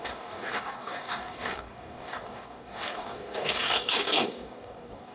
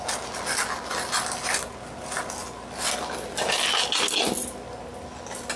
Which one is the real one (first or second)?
second